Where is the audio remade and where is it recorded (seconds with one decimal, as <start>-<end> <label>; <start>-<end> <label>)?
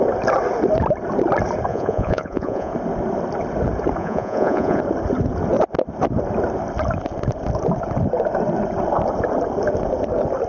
0.0-1.7 recorded; 1.7-2.7 remade; 2.7-4.0 recorded; 4.0-4.8 remade; 4.8-10.5 recorded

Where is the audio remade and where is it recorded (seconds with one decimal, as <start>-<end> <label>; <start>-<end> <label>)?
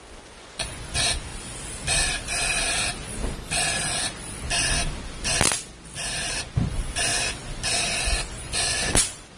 0.0-1.3 remade; 1.3-6.4 recorded; 6.4-7.1 remade; 7.1-8.0 recorded; 8.0-9.4 remade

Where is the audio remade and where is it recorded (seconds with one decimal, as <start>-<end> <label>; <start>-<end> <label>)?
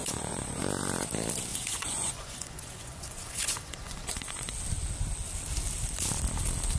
0.0-0.6 remade; 0.6-1.5 recorded; 1.5-4.5 remade; 4.5-6.8 recorded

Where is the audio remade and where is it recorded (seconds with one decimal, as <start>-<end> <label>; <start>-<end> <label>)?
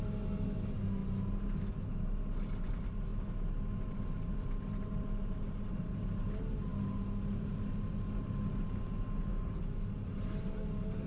0.0-11.1 recorded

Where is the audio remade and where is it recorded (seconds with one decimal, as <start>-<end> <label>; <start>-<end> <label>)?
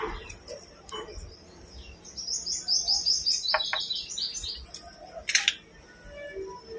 0.0-6.8 recorded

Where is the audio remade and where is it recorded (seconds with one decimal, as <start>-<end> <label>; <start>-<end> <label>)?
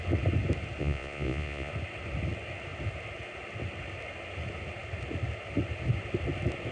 0.0-0.8 recorded; 0.8-1.7 remade; 1.7-6.7 recorded